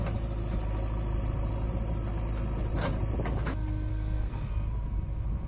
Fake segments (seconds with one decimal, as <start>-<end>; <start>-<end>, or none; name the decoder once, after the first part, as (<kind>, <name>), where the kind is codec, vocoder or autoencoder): 3.9-4.5 (codec, SNAC)